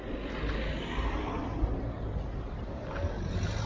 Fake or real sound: real